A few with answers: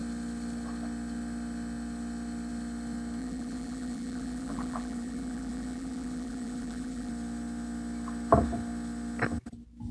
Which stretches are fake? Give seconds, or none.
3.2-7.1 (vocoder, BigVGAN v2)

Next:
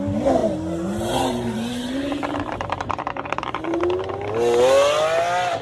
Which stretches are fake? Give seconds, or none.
0.4-3.8 (vocoder, BigVGAN v2)

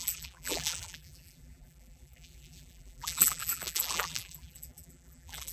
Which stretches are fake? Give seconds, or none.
0.0-5.5 (vocoder, BigVGAN v2)

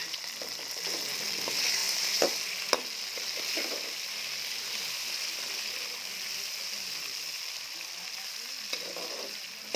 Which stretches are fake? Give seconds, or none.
0.0-0.7 (vocoder, BigVGAN v2)

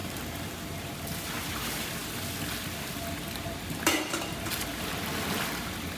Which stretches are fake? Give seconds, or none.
0.0-1.0 (vocoder, BigVGAN v2)

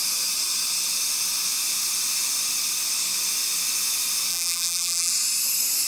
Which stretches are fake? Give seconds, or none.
4.3-5.1 (vocoder, BigVGAN v2)